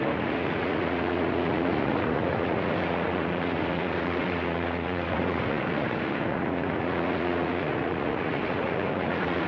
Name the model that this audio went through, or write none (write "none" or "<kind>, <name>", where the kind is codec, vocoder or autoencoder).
vocoder, Vocos